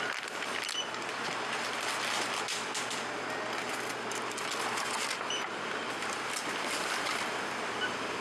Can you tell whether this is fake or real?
real